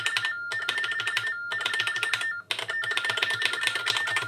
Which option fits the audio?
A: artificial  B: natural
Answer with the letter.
B